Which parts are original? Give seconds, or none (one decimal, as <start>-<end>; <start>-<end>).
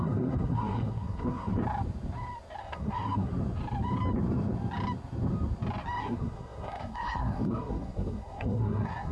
1.5-2.6; 3.3-6.0